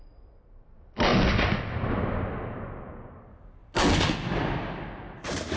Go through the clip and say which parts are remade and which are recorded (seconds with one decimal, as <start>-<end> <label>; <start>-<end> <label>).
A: 0.0-5.6 recorded